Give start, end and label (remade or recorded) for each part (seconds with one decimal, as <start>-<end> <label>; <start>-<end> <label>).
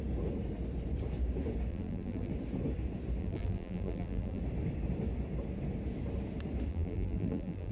0.0-1.7 recorded; 1.7-2.3 remade; 2.3-3.2 recorded; 3.2-4.4 remade; 4.4-6.7 recorded; 6.7-7.7 remade